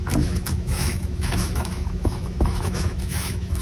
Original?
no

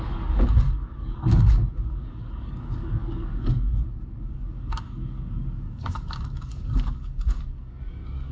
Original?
no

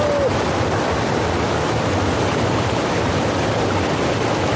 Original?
yes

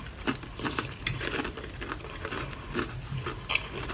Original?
yes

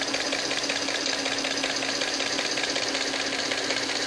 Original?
yes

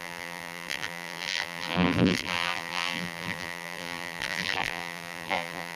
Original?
no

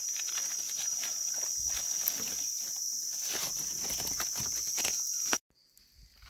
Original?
yes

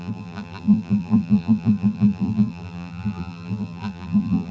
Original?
no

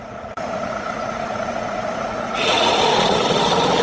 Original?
no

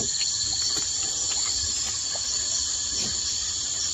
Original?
yes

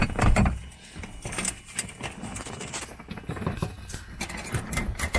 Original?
yes